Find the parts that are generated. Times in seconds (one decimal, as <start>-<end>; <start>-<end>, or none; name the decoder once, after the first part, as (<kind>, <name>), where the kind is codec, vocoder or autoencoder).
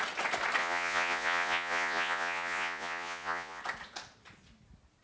0.6-3.6 (vocoder, Vocos)